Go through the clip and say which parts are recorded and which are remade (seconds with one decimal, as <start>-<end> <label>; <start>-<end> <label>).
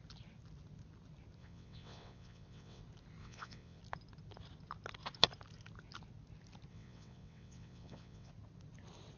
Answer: 0.0-1.4 recorded; 1.4-2.8 remade; 2.8-3.2 recorded; 3.2-3.8 remade; 3.8-6.7 recorded; 6.7-8.3 remade; 8.3-9.2 recorded